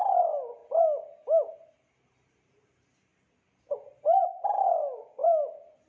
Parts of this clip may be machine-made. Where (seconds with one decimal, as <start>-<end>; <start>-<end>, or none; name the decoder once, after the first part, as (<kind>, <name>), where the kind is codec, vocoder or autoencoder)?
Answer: none